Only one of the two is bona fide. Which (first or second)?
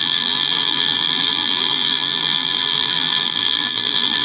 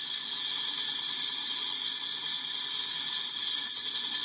second